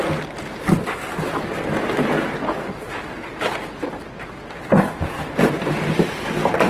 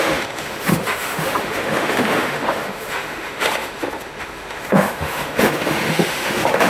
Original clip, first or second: first